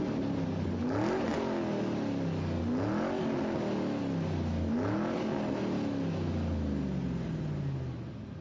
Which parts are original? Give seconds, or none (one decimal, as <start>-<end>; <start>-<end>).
0.0-8.4